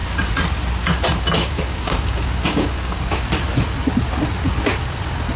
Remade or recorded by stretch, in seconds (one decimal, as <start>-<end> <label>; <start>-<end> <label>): 0.0-1.4 recorded; 1.4-3.2 remade; 3.2-5.4 recorded